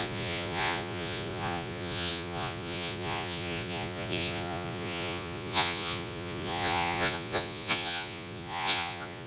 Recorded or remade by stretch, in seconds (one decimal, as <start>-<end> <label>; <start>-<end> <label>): 0.0-9.3 remade